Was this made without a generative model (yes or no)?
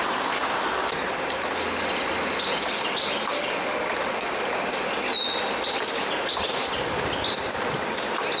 yes